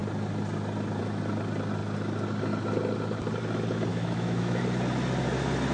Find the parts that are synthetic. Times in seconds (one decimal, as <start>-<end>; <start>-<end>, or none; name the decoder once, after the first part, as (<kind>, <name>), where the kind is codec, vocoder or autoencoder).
3.9-4.6 (autoencoder, DAC-VAE)